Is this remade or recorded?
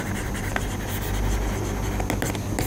recorded